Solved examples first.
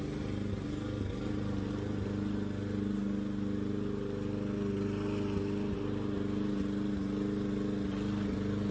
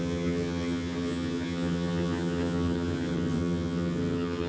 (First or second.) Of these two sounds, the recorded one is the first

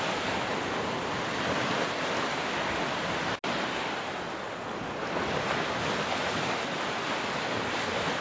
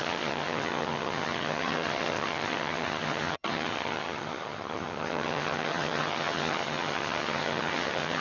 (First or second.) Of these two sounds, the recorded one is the first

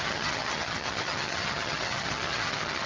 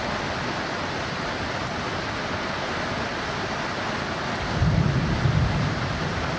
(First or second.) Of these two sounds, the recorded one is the second